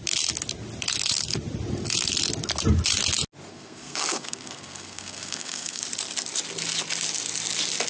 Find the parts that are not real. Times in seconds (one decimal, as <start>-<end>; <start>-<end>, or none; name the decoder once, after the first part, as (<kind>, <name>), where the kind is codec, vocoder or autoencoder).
3.5-5.8 (codec, SNAC)